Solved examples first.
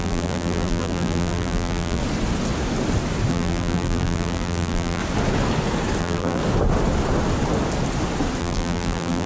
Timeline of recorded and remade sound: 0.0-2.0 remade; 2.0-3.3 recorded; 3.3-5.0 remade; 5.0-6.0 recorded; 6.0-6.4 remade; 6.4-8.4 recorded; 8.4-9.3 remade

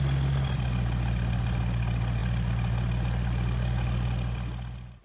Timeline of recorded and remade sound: 0.0-5.0 recorded

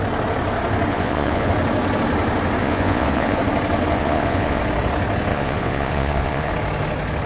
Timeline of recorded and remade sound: 0.0-0.9 recorded; 0.9-1.5 remade; 1.5-2.6 recorded; 2.6-3.4 remade; 3.4-3.9 recorded; 3.9-4.6 remade; 4.6-5.3 recorded; 5.3-6.5 remade; 6.5-7.3 recorded

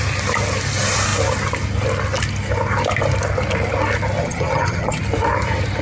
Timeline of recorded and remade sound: 0.0-4.2 recorded; 4.2-5.0 remade; 5.0-5.8 recorded